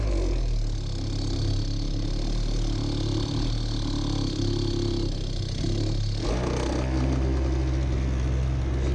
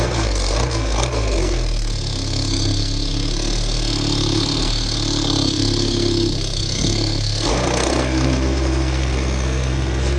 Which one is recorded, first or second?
first